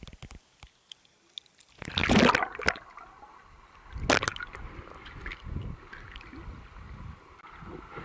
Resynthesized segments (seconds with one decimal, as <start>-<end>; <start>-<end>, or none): none